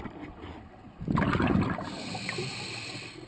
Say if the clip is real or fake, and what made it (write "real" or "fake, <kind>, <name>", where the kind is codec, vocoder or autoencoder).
real